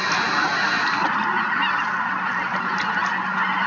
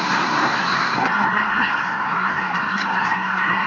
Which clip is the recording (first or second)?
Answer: first